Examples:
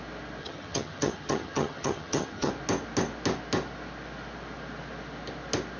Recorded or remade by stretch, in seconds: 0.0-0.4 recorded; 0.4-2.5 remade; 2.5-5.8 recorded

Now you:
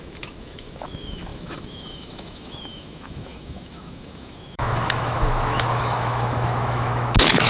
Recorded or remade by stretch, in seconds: 0.0-7.5 remade

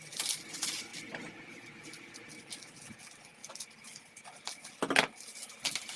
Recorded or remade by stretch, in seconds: 0.0-0.9 recorded; 0.9-2.4 remade; 2.4-3.4 recorded; 3.4-4.3 remade; 4.3-6.0 recorded

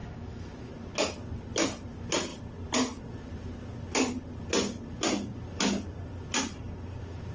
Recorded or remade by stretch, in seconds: 0.0-0.7 remade; 0.7-7.3 recorded